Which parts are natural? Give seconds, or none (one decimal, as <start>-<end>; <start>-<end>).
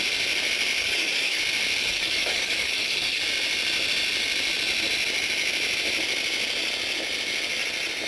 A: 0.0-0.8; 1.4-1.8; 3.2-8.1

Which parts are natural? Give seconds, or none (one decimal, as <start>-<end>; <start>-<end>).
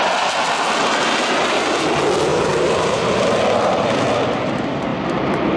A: 0.0-2.3; 4.2-5.6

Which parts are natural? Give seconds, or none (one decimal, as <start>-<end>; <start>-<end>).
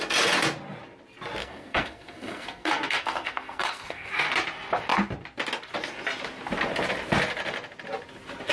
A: 0.0-1.4; 4.1-8.5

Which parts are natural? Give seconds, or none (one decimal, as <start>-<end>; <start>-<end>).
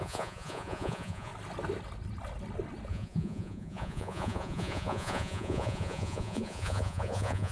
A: 1.3-2.9